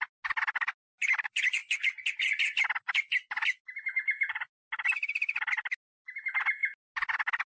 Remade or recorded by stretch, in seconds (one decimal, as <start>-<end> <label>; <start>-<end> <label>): 0.0-7.6 recorded